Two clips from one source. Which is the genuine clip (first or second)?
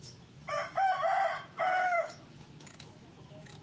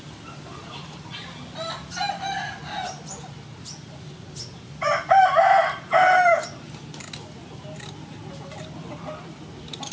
second